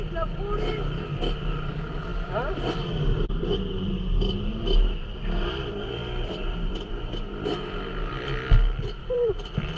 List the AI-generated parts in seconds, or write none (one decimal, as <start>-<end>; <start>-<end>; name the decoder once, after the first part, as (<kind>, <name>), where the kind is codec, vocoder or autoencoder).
6.0-6.9 (vocoder, BigVGAN v2); 9.0-9.8